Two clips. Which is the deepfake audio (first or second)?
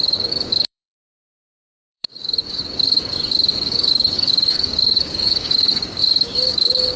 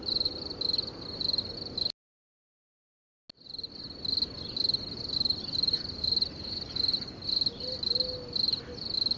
first